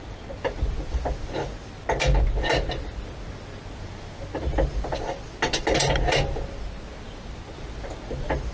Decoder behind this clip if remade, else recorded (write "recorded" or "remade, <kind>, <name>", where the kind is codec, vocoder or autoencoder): recorded